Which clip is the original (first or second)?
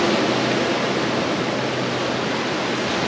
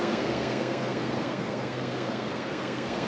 first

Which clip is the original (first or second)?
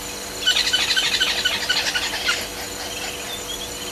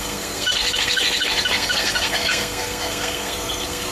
first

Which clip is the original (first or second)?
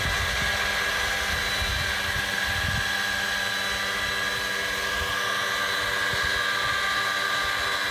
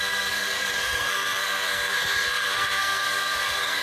first